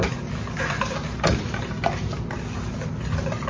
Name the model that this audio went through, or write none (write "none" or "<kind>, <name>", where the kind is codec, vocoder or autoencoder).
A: none